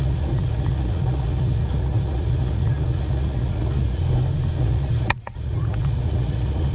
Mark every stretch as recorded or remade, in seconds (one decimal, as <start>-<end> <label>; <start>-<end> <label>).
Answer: 0.0-4.0 remade; 4.0-4.6 recorded; 4.6-6.7 remade